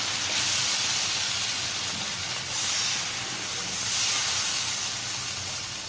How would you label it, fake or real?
real